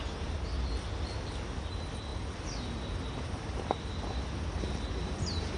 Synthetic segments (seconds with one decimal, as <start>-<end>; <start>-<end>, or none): none

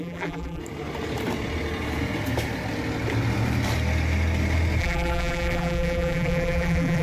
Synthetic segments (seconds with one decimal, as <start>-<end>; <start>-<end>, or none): 0.0-0.6; 4.8-7.0

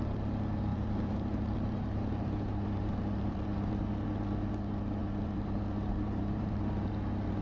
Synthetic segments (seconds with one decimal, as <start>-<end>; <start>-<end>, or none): 0.7-3.9; 5.0-6.6

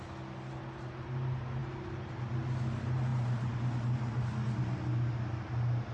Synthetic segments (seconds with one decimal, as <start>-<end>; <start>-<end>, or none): none

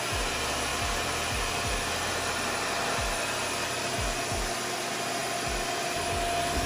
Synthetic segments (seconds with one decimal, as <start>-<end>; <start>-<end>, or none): 0.7-4.7; 5.2-5.9

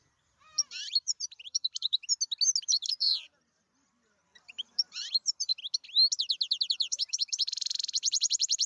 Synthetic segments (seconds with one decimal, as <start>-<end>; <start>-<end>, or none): 0.0-2.0; 2.6-5.5; 6.7-8.7